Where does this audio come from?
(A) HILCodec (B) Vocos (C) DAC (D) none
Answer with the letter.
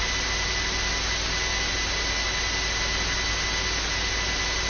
D